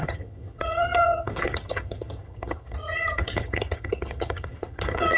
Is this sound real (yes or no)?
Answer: no